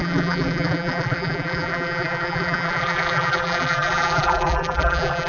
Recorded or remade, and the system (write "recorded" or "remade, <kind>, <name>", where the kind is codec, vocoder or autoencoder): remade, vocoder, BigVGAN v2